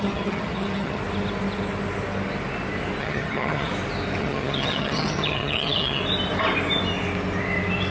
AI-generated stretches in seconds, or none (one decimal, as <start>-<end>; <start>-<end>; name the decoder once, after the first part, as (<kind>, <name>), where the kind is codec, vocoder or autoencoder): 0.0-1.0 (vocoder, HiFi-GAN); 3.0-3.7; 4.2-6.0